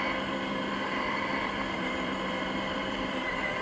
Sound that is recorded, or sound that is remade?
remade